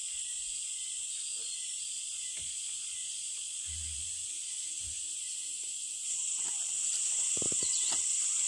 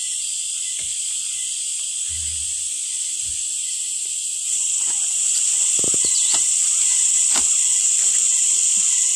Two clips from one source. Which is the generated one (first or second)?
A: second